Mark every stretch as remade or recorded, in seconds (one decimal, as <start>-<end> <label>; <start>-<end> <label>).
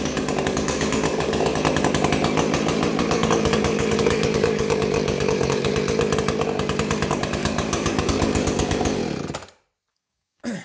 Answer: 0.0-1.5 remade; 1.5-3.0 recorded; 3.0-5.7 remade; 5.7-7.1 recorded; 7.1-9.0 remade; 9.0-9.9 recorded; 9.9-10.6 remade